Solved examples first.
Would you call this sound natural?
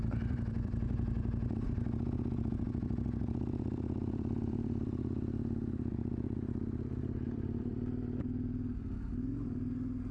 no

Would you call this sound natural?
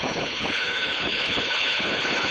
no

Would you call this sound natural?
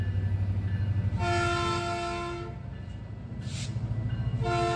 yes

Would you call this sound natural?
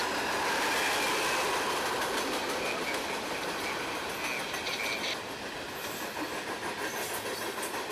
yes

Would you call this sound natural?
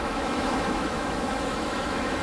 no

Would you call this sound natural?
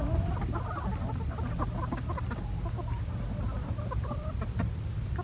yes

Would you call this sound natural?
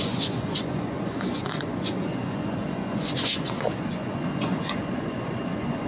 no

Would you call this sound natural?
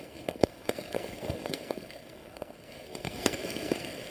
no